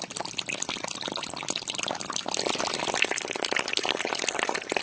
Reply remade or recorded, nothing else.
recorded